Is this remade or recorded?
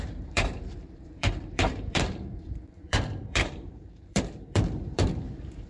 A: remade